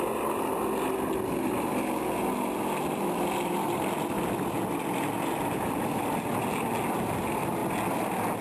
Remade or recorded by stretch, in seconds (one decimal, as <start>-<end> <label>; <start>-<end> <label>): 0.0-8.4 recorded